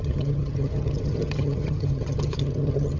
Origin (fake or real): fake